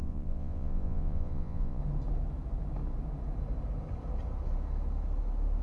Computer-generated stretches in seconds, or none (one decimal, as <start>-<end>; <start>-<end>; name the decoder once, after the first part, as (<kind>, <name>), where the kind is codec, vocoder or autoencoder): 0.0-1.8 (vocoder, Vocos)